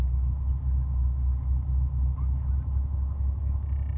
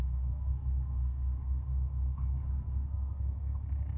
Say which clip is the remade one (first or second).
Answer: second